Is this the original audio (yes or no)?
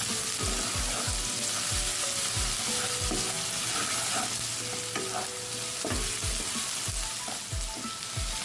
yes